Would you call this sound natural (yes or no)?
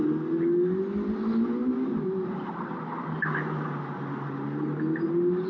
yes